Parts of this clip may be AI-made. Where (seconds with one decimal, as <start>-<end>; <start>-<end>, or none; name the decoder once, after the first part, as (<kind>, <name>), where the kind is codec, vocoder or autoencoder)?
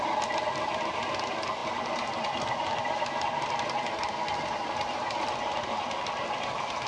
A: none